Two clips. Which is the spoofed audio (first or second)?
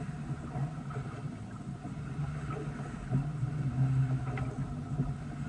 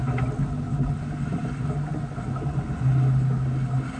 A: first